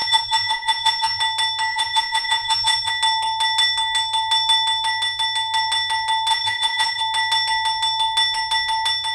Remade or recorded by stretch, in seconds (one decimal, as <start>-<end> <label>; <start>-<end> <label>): 0.0-1.2 remade; 1.2-1.7 recorded; 1.7-2.9 remade; 2.9-6.3 recorded; 6.3-7.0 remade; 7.0-9.1 recorded